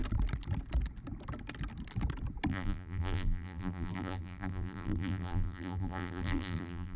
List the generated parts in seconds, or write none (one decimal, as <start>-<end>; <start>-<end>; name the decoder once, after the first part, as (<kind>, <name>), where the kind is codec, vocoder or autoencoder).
2.5-7.0 (vocoder, BigVGAN v2)